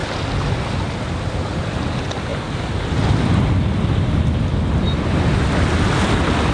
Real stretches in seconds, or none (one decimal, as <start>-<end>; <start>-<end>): 0.0-6.5